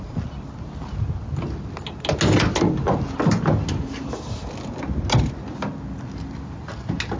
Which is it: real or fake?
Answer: real